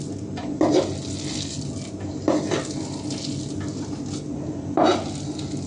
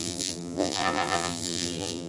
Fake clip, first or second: second